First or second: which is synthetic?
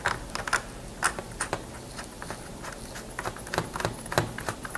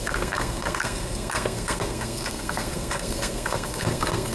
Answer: second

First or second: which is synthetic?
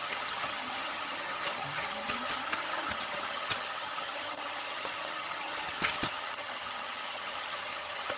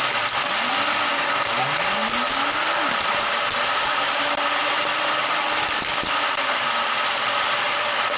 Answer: first